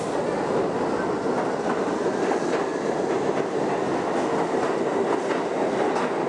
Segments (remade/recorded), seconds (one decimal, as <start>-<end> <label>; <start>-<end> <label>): 0.0-6.3 recorded